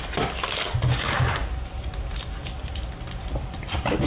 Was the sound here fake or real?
fake